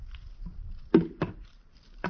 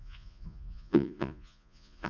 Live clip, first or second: first